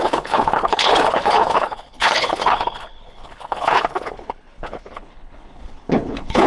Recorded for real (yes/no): no